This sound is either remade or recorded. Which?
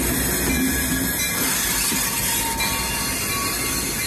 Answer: recorded